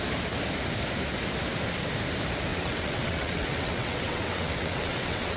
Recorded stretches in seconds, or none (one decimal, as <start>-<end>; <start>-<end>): 0.0-2.5